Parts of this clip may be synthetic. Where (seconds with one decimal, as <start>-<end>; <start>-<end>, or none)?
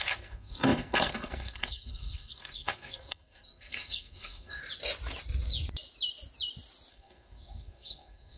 0.0-4.6; 6.9-8.4